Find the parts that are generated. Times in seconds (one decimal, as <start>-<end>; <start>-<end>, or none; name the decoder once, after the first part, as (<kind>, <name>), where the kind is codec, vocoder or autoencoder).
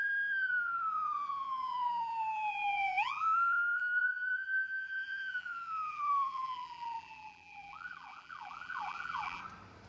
0.0-9.4 (vocoder, BigVGAN v2)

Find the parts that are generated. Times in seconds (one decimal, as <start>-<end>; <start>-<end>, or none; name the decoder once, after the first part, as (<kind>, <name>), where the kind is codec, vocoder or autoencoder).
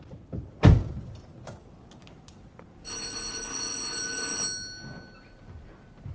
none